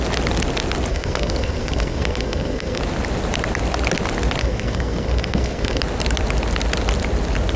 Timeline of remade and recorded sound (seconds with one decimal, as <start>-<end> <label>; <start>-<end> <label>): 0.0-0.9 recorded; 0.9-2.8 remade; 2.8-4.4 recorded; 4.4-5.8 remade; 5.8-7.6 recorded